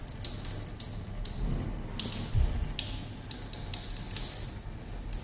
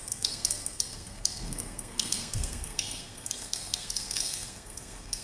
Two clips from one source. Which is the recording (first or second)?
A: first